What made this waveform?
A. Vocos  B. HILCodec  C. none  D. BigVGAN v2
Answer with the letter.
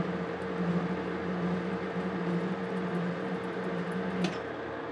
C